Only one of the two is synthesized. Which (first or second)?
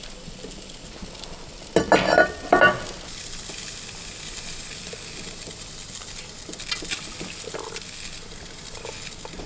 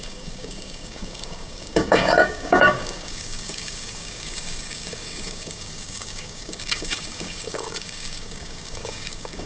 second